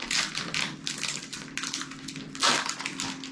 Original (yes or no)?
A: yes